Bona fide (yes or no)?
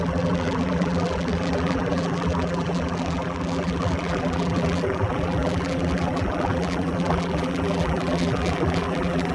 no